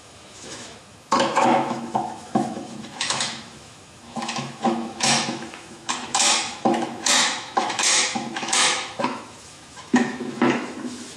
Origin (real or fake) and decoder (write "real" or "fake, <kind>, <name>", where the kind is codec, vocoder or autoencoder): fake, autoencoder, DAC-VAE